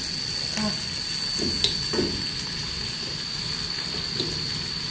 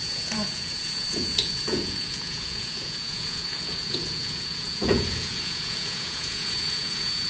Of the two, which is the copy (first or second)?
second